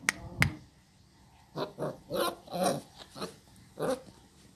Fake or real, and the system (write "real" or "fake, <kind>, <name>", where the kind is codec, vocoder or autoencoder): real